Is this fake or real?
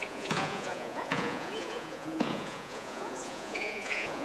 fake